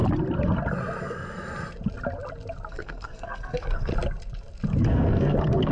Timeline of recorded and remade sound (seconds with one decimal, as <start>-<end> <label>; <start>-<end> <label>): 0.0-2.7 recorded; 2.7-3.9 remade; 3.9-4.9 recorded; 4.9-5.7 remade